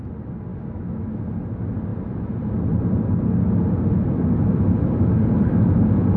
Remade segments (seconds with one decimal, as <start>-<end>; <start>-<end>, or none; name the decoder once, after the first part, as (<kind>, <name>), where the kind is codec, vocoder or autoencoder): 0.5-1.2 (autoencoder, DAC-VAE)